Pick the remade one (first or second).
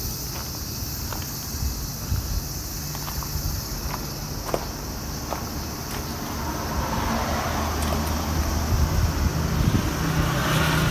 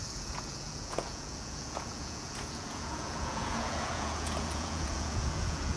second